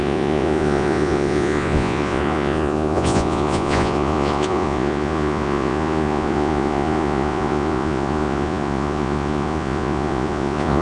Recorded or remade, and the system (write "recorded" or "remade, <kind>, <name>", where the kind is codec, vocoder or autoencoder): remade, vocoder, Vocos